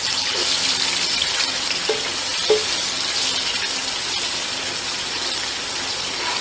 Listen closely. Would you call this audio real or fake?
real